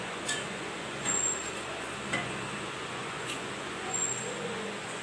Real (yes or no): no